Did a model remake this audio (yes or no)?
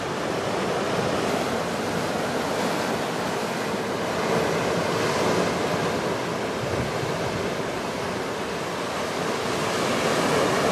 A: no